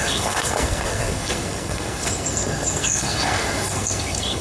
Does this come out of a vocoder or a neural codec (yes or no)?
yes